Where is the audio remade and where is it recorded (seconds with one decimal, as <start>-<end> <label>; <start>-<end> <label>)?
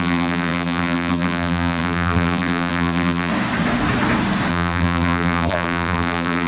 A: 0.0-3.3 remade; 3.3-4.5 recorded; 4.5-6.5 remade